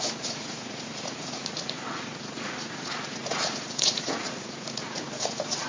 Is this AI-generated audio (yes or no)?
yes